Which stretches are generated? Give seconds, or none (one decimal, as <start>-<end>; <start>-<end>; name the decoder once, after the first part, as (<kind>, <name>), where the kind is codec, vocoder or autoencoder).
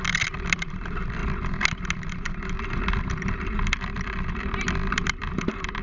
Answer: 0.0-1.2 (vocoder, BigVGAN v2); 4.7-5.8